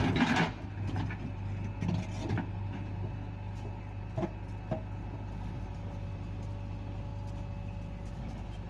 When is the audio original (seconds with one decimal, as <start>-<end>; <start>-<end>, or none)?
0.0-8.7